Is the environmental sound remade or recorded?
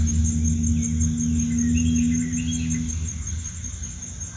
recorded